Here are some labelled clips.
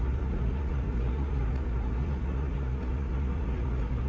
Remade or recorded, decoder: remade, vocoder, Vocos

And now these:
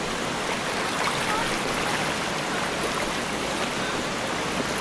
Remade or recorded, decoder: recorded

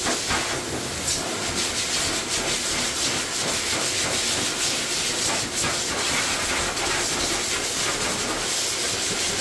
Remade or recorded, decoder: recorded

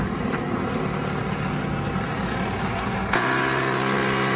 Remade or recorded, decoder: recorded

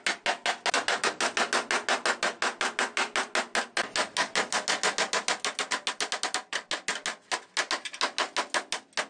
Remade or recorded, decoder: recorded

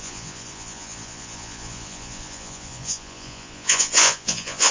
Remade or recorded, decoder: remade, vocoder, Vocos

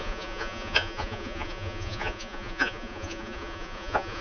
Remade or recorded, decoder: remade, vocoder, Vocos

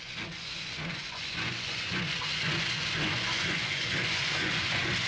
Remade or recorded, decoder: remade, vocoder, Vocos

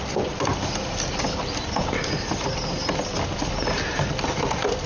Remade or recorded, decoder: recorded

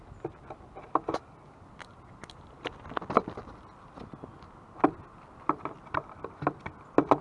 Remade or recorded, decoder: recorded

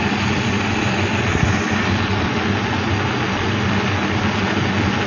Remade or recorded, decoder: recorded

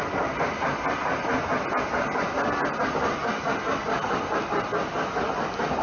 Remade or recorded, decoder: recorded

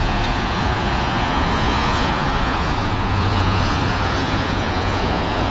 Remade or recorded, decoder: remade, vocoder, Vocos